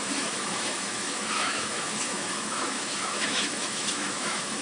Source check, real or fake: fake